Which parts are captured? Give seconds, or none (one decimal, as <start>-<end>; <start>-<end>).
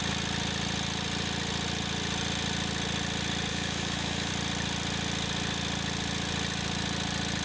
0.0-3.5; 4.3-7.4